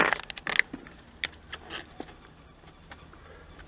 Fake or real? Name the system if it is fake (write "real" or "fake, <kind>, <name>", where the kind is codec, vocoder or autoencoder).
real